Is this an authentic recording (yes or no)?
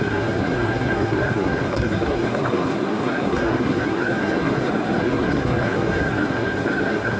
no